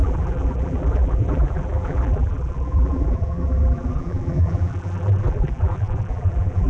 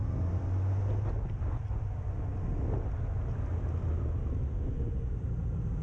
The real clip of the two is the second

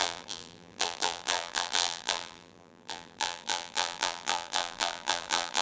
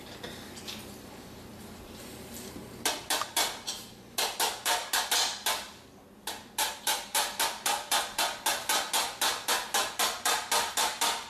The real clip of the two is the second